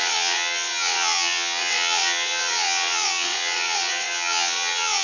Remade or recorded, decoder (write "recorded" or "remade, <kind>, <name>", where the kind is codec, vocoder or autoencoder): remade, vocoder, WaveNeXt